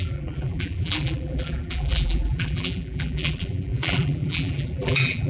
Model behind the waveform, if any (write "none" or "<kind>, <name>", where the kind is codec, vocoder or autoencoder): vocoder, BigVGAN v2